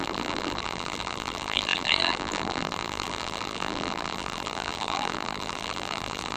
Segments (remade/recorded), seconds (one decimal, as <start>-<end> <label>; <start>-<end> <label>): 0.0-6.4 remade